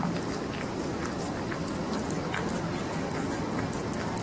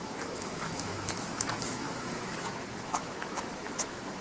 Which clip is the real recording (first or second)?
first